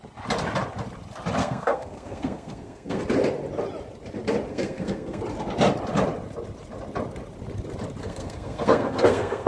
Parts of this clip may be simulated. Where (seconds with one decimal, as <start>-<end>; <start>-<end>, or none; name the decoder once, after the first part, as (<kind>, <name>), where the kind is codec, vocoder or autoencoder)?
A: 1.4-3.0 (codec, SNAC); 4.5-5.2; 8.0-9.5